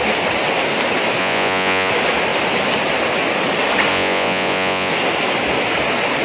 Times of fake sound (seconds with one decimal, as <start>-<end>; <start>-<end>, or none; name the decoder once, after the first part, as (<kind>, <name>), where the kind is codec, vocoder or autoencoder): 1.2-1.9 (vocoder, Vocos); 3.9-4.9

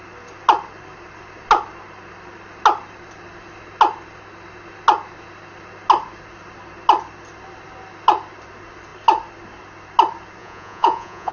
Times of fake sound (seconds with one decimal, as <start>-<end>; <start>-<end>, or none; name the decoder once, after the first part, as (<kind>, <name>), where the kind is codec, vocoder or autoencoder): 10.4-11.3 (vocoder, Vocos)

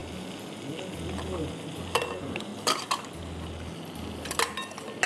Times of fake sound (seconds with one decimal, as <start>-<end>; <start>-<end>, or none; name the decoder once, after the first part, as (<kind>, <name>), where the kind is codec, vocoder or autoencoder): 2.1-2.5 (vocoder, Vocos)

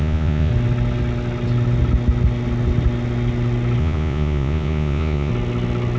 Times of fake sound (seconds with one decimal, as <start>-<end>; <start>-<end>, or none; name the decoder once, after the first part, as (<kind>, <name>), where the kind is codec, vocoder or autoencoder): 0.0-0.5 (vocoder, Vocos); 3.8-5.3

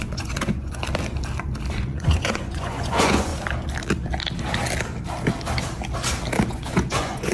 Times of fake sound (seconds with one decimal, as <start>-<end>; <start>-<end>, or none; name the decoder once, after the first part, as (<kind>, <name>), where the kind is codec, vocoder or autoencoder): 0.0-0.8 (vocoder, Vocos); 1.8-3.3; 6.5-7.3

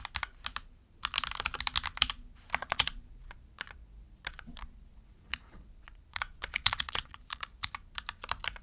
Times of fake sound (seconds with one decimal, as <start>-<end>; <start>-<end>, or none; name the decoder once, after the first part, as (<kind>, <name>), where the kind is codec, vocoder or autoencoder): 2.6-7.7 (vocoder, Vocos)

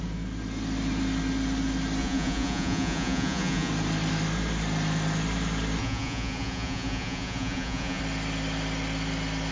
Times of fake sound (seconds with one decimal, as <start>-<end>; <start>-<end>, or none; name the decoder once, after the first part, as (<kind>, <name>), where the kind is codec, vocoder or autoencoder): 2.0-3.7 (vocoder, Vocos); 5.8-8.0